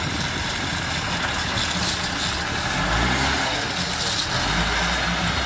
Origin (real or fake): real